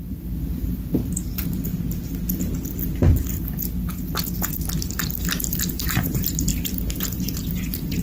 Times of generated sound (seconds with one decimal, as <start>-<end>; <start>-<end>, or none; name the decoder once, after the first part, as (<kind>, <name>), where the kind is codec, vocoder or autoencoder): 0.0-1.0 (vocoder, BigVGAN v2); 5.7-6.5; 7.0-8.0